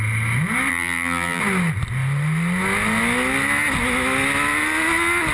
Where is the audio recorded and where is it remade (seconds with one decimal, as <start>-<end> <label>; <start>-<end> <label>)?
0.0-0.7 recorded; 0.7-1.4 remade; 1.4-5.3 recorded